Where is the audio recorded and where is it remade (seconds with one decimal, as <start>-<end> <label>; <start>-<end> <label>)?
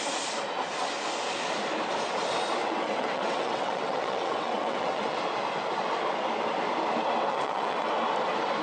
0.0-2.6 recorded; 2.6-5.2 remade; 5.2-7.3 recorded; 7.3-7.9 remade; 7.9-8.6 recorded